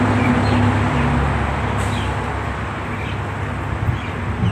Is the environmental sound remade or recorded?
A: recorded